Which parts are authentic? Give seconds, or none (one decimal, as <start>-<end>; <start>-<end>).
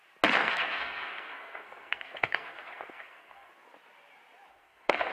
0.0-0.4; 3.5-4.5